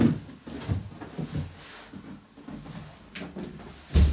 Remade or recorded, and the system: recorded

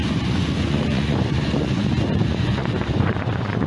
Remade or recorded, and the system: remade, vocoder, Vocos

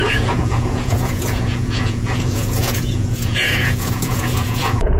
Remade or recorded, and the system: remade, vocoder, Vocos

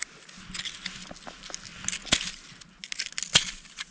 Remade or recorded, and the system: recorded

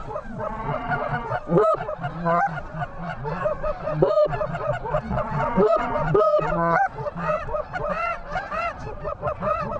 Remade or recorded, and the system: remade, vocoder, Vocos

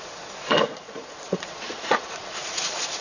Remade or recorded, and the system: remade, vocoder, Vocos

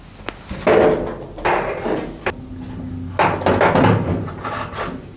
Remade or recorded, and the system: recorded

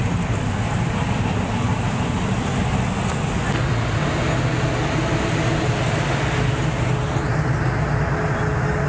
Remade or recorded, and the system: recorded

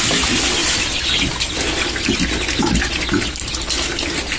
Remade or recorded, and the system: recorded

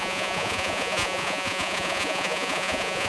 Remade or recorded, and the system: remade, vocoder, Vocos